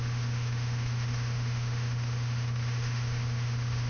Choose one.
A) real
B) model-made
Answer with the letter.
B